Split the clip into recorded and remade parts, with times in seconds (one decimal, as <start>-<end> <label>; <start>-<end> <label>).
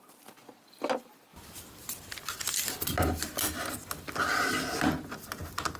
0.0-5.8 recorded